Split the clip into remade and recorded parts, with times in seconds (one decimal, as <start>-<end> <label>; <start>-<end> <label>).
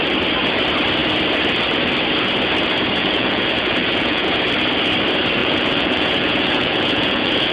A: 0.0-3.0 recorded; 3.0-4.4 remade; 4.4-5.4 recorded; 5.4-7.5 remade